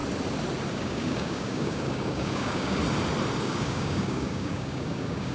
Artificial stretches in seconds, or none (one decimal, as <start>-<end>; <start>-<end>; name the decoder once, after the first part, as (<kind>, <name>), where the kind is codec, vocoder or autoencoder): 0.7-2.8 (codec, DAC); 3.4-5.3